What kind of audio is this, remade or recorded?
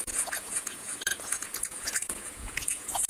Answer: remade